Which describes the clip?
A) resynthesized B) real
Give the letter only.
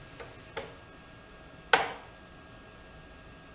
B